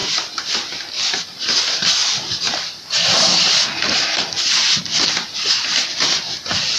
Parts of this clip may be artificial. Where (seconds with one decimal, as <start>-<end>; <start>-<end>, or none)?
none